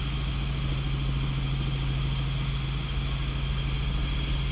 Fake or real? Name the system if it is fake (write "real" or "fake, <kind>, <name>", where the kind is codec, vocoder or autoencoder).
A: real